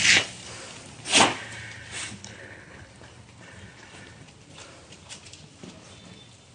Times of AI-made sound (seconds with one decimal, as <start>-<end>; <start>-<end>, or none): 2.2-2.9